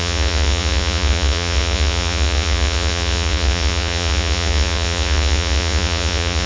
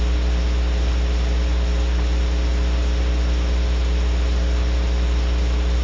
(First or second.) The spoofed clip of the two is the first